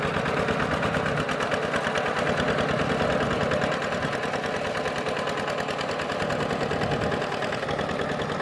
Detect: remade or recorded recorded